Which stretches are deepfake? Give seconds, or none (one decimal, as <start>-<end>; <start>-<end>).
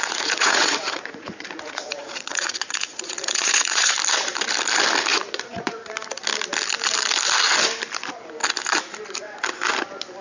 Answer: 0.0-3.9; 5.1-5.9